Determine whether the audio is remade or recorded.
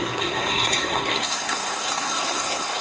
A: remade